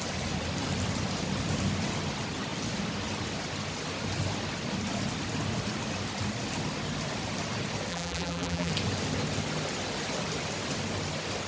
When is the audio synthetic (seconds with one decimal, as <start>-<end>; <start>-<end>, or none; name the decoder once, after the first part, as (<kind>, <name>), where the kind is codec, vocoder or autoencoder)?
7.9-8.7 (vocoder, BigVGAN v2)